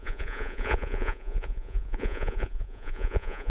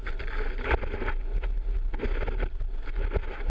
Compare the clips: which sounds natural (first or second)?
second